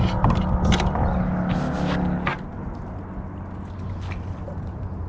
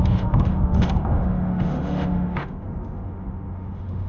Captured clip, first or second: first